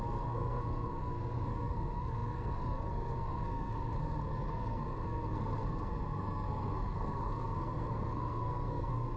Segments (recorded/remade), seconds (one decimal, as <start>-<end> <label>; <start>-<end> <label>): 0.0-9.2 remade